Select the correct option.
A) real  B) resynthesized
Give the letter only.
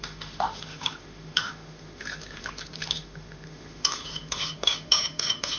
B